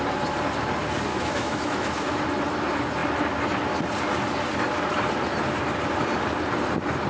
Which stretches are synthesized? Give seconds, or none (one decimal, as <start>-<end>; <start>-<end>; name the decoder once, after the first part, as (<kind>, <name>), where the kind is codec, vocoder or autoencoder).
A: 1.1-2.2 (autoencoder, DAC-VAE)